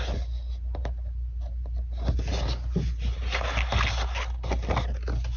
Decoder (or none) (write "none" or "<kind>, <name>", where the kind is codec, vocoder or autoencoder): none